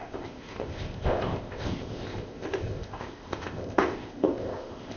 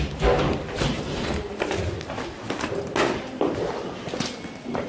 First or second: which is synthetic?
first